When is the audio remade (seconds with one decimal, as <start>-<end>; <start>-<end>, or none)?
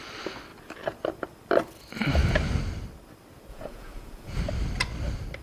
3.5-4.4